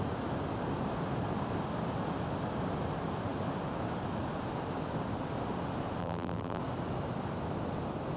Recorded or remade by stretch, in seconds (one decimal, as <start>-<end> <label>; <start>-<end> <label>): 0.0-6.0 recorded; 6.0-6.6 remade; 6.6-8.2 recorded